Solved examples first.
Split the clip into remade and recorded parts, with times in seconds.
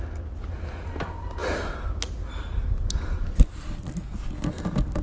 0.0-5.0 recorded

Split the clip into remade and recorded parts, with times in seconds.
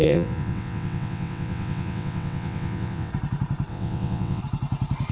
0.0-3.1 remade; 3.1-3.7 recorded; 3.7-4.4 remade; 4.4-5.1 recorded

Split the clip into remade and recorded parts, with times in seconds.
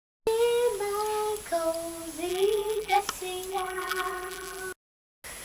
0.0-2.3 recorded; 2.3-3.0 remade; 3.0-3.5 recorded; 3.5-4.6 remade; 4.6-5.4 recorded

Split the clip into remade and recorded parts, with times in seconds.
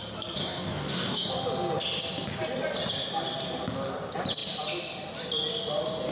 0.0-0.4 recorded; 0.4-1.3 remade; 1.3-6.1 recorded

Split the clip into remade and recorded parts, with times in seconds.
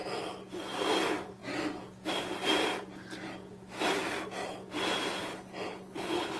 0.0-5.2 recorded; 5.2-6.4 remade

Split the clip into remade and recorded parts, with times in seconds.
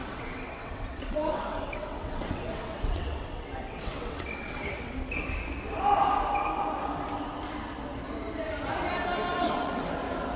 0.0-4.9 remade; 4.9-9.3 recorded; 9.3-9.9 remade; 9.9-10.4 recorded